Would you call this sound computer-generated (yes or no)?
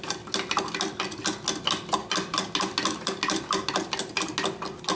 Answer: no